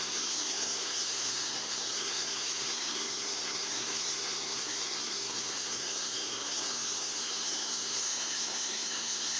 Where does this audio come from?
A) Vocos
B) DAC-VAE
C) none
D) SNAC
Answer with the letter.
D